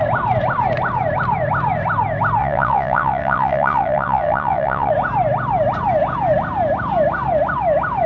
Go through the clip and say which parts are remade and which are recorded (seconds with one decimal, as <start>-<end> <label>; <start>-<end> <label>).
0.0-2.4 recorded; 2.4-4.9 remade; 4.9-8.1 recorded